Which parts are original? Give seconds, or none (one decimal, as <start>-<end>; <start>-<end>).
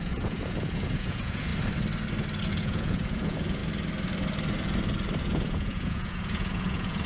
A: 1.5-2.5; 3.6-5.2